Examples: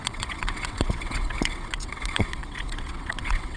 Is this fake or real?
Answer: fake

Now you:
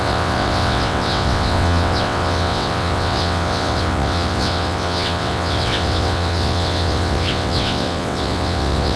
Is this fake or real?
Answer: fake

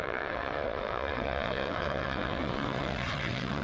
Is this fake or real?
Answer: fake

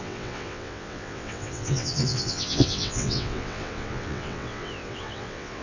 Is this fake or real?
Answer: fake